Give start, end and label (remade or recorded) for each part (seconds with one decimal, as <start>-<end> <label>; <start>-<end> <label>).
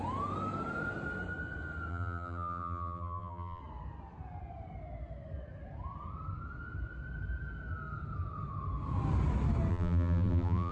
0.0-1.9 recorded; 1.9-3.6 remade; 3.6-9.7 recorded; 9.7-10.7 remade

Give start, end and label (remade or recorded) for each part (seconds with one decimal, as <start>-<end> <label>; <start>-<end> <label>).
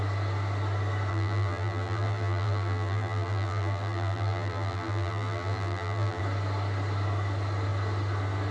0.0-1.1 recorded; 1.1-6.2 remade; 6.2-8.5 recorded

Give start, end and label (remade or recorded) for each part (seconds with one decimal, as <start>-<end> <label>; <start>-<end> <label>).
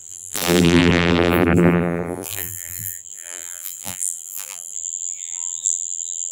0.0-6.3 remade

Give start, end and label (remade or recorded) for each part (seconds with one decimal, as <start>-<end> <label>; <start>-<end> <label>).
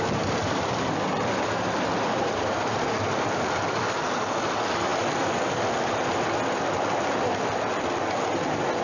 0.0-0.4 recorded; 0.4-0.9 remade; 0.9-1.9 recorded; 1.9-2.8 remade; 2.8-8.8 recorded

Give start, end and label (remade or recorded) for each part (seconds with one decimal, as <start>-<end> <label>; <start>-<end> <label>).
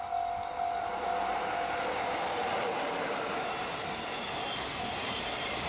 0.0-2.4 recorded; 2.4-3.3 remade; 3.3-4.7 recorded; 4.7-5.7 remade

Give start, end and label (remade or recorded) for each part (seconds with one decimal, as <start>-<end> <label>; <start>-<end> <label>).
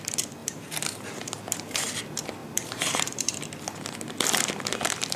0.0-0.4 recorded; 0.4-1.9 remade; 1.9-2.4 recorded; 2.4-3.3 remade; 3.3-5.2 recorded